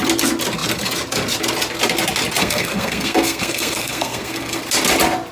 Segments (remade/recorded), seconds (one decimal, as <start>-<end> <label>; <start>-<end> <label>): 0.0-2.4 recorded; 2.4-4.6 remade; 4.6-5.3 recorded